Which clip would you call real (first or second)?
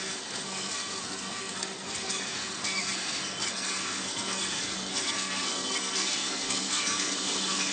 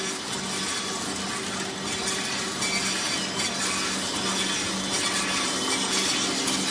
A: second